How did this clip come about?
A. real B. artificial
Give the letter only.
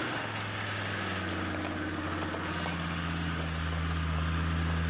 A